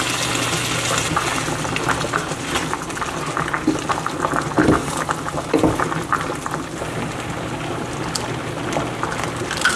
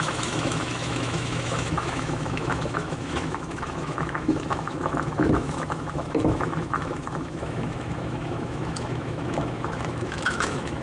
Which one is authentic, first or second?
first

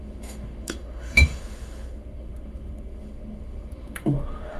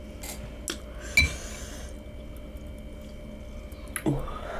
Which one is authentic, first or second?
second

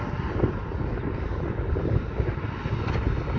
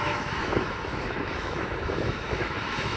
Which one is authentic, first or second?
first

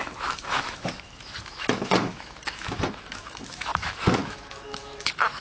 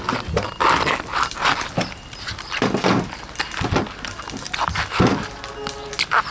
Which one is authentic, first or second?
second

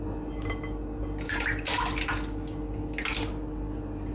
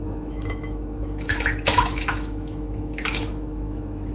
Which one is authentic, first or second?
first